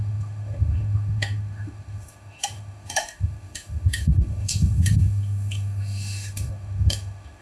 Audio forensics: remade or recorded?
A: remade